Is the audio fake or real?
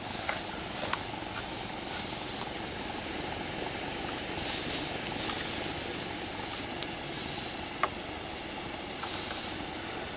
real